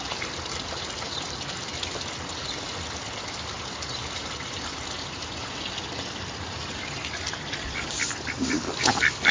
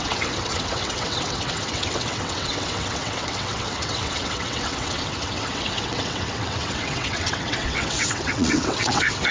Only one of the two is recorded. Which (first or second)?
first